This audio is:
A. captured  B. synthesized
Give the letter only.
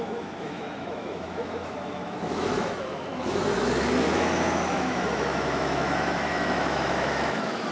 B